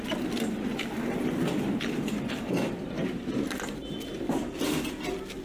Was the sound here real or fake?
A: real